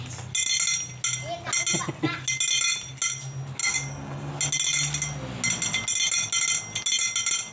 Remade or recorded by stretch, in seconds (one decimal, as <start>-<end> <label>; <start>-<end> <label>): 0.0-3.6 recorded; 3.6-4.3 remade; 4.3-7.5 recorded